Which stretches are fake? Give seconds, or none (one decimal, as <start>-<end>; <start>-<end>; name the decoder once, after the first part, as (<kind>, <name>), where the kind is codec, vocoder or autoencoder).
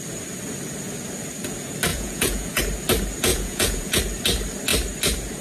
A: 1.9-2.6 (vocoder, Vocos); 3.3-4.0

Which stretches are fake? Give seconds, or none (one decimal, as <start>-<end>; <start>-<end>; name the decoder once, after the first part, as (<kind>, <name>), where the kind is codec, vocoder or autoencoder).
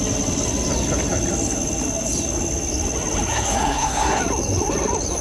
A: 3.3-4.2 (codec, SNAC)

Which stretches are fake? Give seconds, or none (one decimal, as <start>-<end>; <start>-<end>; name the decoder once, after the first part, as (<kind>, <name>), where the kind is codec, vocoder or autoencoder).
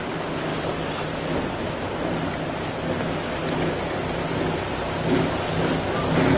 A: none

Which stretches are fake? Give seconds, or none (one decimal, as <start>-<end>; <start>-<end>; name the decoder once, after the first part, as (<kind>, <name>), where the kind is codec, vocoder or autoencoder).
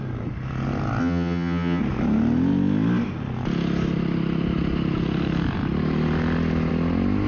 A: 1.0-1.8 (vocoder, HiFi-GAN)